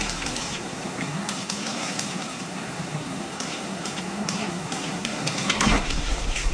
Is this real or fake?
fake